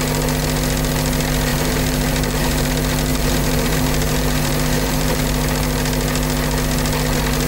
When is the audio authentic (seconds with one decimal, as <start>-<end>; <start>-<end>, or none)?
0.0-1.5; 2.7-3.1; 5.2-7.5